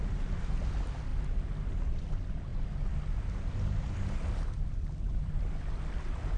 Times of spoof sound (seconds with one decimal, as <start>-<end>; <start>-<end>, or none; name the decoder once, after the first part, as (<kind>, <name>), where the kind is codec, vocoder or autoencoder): none